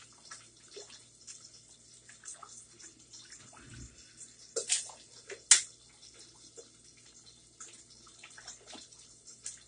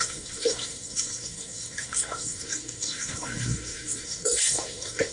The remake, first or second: second